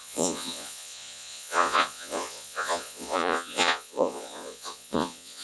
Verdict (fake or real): fake